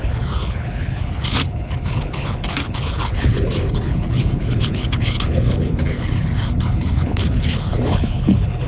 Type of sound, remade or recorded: remade